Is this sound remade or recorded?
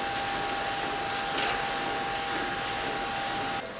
recorded